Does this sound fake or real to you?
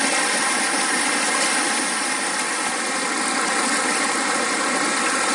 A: real